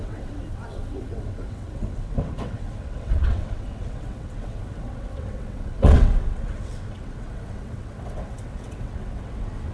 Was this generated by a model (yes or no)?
yes